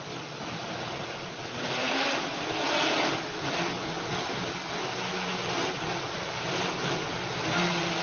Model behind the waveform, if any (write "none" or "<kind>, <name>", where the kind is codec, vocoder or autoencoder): none